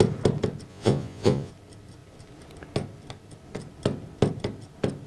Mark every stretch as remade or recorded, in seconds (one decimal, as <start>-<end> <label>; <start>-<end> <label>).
0.0-0.7 recorded; 0.7-1.5 remade; 1.5-5.1 recorded